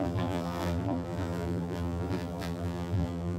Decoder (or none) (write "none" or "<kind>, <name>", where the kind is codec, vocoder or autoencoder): vocoder, BigVGAN v2